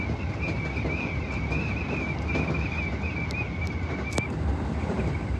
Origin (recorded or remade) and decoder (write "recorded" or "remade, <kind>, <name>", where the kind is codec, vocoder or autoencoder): recorded